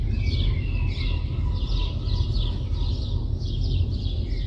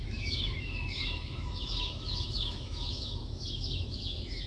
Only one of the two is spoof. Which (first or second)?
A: second